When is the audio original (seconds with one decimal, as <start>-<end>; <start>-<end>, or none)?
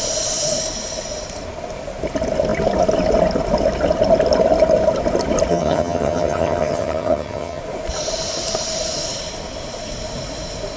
0.0-5.5; 7.6-10.8